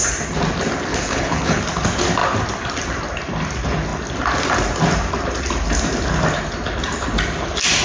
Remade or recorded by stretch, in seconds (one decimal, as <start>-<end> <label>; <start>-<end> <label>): 0.0-0.9 recorded; 0.9-1.6 remade; 1.6-7.8 recorded